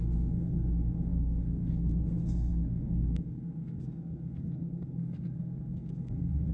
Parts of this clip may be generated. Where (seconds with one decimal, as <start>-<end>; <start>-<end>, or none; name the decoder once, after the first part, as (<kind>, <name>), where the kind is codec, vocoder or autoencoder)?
0.0-6.5 (codec, SNAC)